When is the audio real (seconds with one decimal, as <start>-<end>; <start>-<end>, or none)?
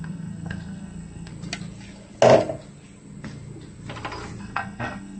1.3-4.4